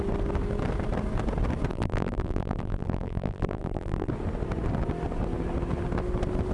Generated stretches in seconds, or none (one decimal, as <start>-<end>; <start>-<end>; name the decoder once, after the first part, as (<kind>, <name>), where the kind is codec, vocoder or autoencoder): 1.7-4.1 (vocoder, BigVGAN v2)